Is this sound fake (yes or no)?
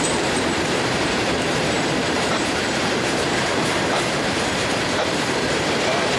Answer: yes